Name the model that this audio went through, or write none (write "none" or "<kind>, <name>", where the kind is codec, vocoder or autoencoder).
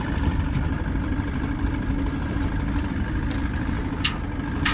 vocoder, BigVGAN v2